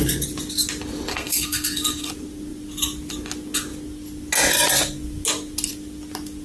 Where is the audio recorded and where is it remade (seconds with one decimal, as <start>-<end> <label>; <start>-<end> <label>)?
0.0-1.1 recorded; 1.1-2.1 remade; 2.1-6.4 recorded